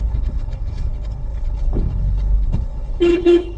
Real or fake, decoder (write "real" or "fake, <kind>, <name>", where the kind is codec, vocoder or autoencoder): fake, codec, HILCodec